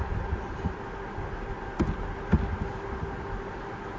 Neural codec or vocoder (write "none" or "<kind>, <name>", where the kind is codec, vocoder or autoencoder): none